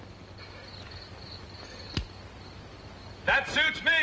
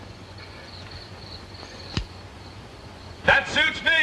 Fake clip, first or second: second